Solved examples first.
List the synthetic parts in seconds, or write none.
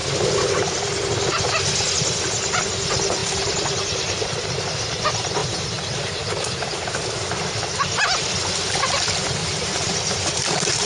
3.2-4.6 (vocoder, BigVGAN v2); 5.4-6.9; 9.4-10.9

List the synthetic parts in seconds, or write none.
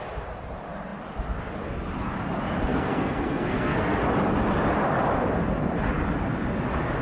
2.7-4.0 (codec, SNAC)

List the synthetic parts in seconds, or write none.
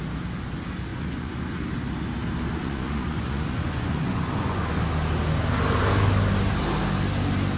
0.9-1.6 (vocoder, Vocos); 2.6-4.6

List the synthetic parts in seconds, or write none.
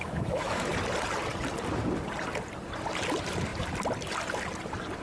0.0-0.7 (autoencoder, DAC-VAE)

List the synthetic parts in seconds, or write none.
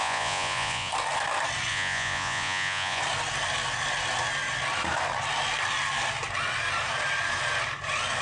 0.0-0.9 (vocoder, Vocos); 1.7-3.0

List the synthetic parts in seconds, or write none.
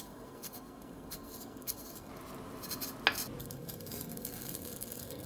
0.0-2.1 (codec, SNAC); 3.4-5.3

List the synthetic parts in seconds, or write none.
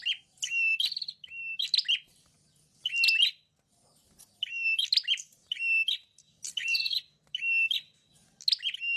none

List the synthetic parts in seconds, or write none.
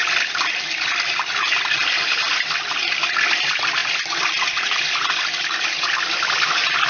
none